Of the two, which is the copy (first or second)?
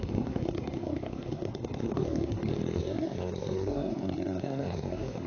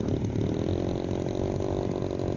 first